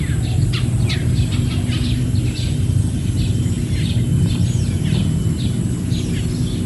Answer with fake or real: real